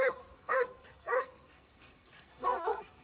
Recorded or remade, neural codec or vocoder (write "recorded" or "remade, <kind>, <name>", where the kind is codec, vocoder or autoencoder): remade, codec, SNAC